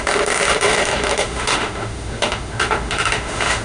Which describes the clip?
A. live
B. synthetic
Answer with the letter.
B